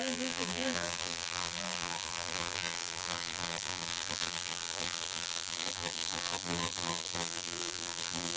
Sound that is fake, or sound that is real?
fake